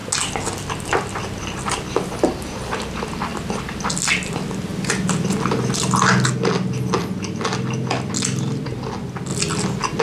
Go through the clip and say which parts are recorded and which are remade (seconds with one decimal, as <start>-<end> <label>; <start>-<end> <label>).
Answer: 0.0-10.0 recorded